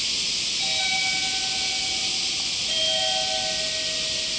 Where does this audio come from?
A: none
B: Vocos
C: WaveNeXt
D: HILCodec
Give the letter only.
A